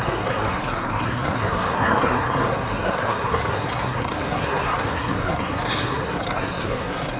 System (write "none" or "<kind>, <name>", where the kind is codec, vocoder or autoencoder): codec, SNAC